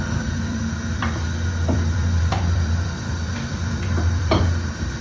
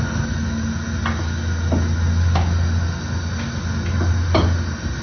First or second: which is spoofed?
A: first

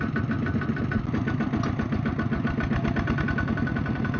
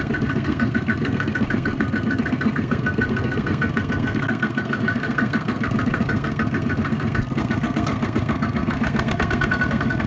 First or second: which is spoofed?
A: second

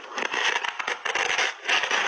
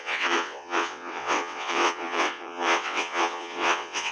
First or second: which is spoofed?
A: second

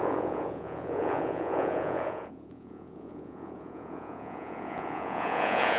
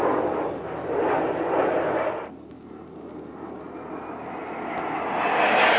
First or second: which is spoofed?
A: first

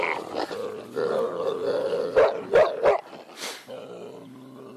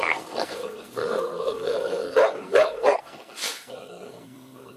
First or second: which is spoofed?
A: second